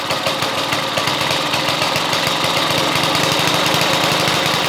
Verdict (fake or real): real